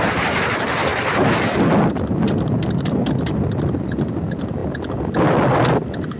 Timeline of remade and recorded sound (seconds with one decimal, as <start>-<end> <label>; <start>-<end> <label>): 0.0-6.2 recorded